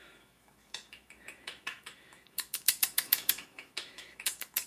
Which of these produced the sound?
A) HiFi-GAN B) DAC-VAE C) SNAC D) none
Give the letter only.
B